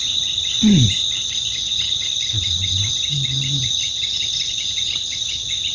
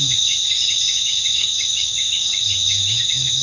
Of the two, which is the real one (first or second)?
first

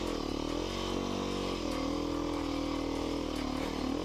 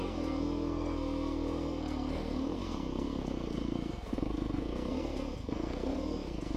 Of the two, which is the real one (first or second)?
first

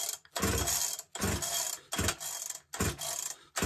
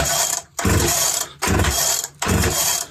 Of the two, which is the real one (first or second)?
first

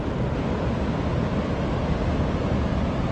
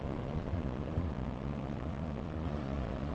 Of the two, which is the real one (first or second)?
first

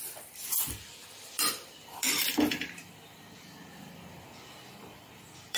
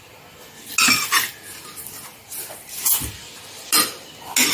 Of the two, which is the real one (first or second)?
second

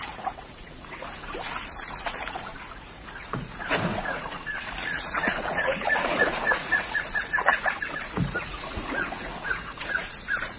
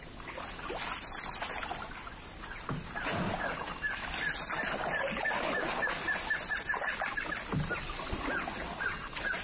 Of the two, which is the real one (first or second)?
second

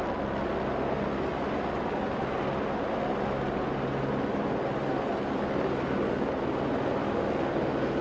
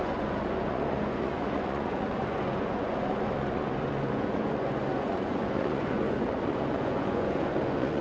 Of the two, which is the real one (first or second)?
first